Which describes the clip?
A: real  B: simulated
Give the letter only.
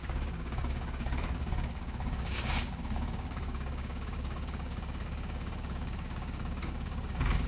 B